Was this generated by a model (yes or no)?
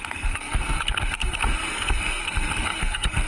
yes